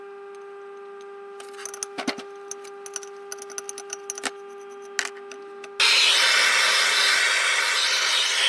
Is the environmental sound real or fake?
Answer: real